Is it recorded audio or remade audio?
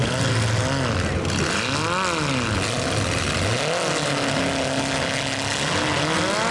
recorded